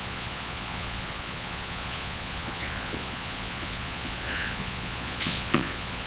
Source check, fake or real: fake